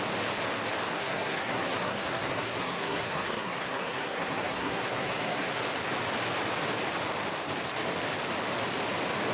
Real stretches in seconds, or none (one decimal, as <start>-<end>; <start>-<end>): 0.0-0.9; 5.6-9.3